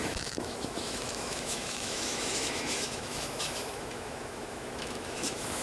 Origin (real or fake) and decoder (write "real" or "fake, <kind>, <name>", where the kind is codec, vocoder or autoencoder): fake, autoencoder, DAC-VAE